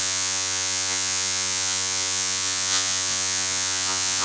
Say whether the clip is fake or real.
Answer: fake